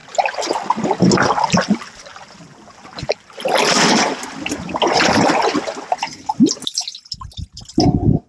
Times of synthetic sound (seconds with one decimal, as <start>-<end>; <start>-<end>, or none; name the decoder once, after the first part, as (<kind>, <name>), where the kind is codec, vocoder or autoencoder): none